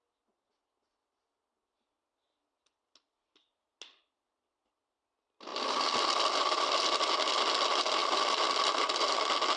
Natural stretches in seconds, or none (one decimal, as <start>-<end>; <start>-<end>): 0.0-9.6